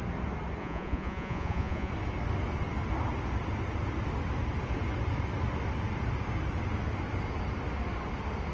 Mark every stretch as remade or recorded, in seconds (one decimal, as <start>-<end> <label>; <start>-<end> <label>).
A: 0.0-0.6 recorded; 0.6-1.9 remade; 1.9-8.5 recorded